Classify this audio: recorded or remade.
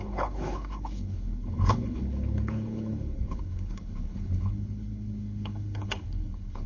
remade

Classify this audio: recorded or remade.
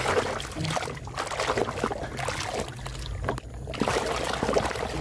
recorded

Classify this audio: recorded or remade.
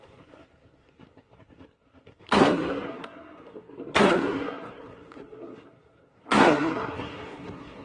remade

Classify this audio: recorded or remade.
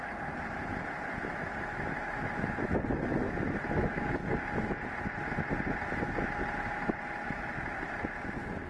recorded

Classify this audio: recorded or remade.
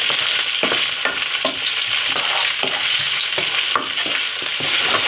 recorded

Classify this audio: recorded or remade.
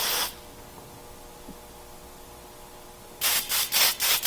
recorded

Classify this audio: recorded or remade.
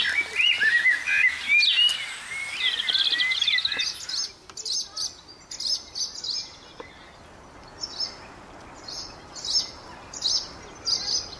recorded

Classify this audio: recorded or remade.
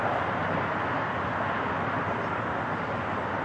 recorded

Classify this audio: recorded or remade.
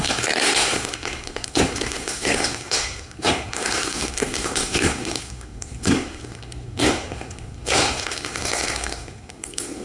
remade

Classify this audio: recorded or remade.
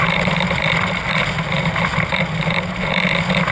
recorded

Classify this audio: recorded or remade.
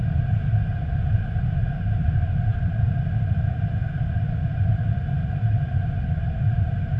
remade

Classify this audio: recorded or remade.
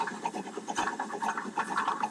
recorded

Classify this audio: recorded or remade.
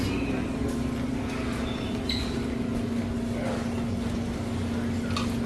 recorded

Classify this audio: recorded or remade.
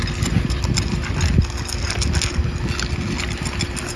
recorded